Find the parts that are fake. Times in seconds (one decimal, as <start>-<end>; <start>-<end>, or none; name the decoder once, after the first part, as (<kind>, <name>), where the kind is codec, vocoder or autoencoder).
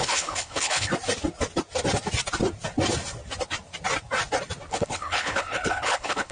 0.0-0.9 (codec, HILCodec); 4.7-6.3